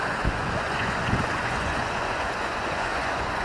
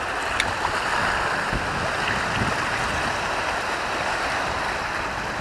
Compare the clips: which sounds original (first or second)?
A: second